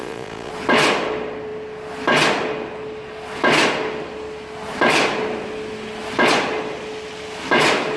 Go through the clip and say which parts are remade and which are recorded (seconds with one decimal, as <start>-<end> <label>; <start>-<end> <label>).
0.0-0.5 remade; 0.5-8.0 recorded